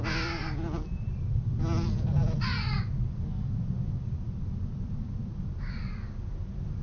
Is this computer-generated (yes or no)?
no